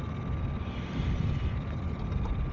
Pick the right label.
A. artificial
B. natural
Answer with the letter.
B